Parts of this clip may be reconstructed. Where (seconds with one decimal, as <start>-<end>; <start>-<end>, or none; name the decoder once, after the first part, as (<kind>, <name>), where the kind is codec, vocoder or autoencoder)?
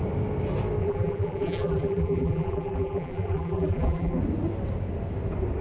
0.8-4.2 (vocoder, BigVGAN v2)